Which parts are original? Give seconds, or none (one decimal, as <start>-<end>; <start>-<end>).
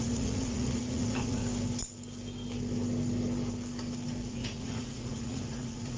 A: 1.4-4.3